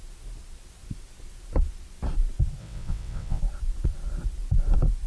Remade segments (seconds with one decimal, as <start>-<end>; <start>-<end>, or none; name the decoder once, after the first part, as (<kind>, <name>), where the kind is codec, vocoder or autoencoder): 2.6-3.4 (vocoder, WaveNeXt)